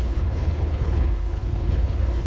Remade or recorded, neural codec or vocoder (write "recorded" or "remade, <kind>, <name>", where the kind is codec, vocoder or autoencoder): remade, codec, HILCodec